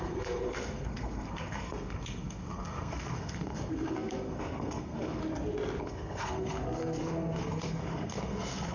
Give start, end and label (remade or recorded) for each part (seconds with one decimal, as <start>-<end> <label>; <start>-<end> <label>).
0.0-5.2 remade; 5.2-5.8 recorded; 5.8-8.7 remade

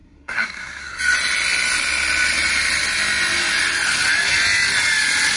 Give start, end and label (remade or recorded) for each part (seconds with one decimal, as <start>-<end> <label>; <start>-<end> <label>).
0.0-1.0 remade; 1.0-5.4 recorded

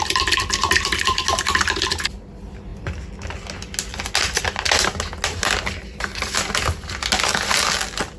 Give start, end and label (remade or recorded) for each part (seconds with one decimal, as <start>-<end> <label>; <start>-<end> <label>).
0.0-8.2 recorded

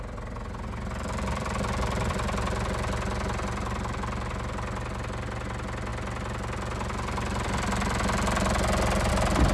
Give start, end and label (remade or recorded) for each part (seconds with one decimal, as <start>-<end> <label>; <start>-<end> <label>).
0.0-9.5 recorded